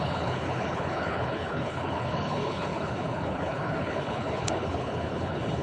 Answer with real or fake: fake